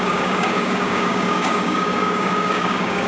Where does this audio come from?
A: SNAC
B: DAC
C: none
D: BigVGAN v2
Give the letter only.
B